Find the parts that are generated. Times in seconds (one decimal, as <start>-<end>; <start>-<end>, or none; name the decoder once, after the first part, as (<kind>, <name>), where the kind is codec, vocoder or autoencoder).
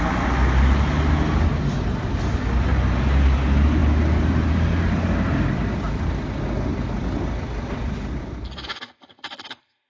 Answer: none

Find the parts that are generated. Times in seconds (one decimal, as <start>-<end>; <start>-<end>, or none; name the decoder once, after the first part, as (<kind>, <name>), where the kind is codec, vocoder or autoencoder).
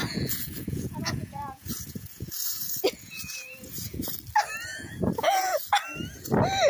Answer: 0.0-4.0 (vocoder, Vocos); 4.7-5.6